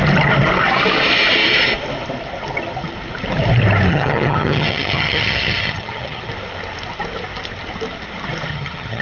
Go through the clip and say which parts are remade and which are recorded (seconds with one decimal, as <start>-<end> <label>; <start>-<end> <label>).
0.0-3.9 recorded; 3.9-6.3 remade; 6.3-8.5 recorded; 8.5-9.0 remade